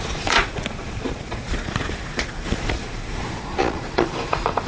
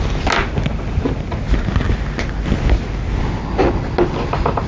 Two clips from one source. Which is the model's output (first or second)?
first